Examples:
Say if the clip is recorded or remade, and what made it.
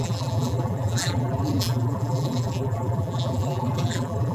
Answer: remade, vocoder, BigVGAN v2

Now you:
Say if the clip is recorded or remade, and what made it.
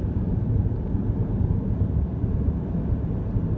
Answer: recorded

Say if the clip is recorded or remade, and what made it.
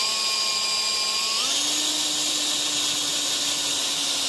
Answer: recorded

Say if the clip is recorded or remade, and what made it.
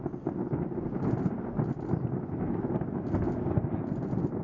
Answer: recorded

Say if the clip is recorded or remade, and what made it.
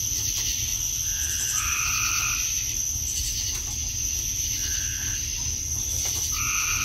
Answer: recorded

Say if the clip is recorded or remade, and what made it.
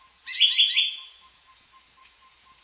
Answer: remade, vocoder, Vocos